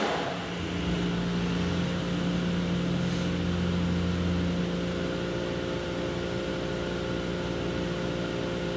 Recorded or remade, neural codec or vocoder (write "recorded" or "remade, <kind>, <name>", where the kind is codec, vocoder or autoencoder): recorded